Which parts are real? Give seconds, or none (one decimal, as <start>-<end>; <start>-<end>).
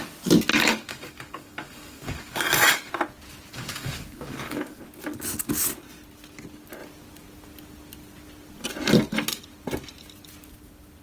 0.0-0.5; 2.9-3.5; 4.8-11.0